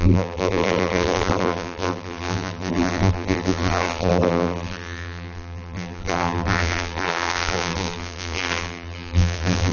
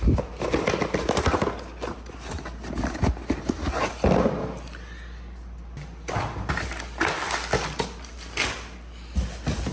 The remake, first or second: first